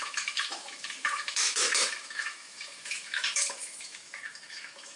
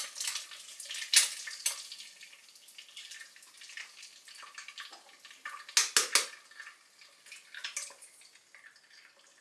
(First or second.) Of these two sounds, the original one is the second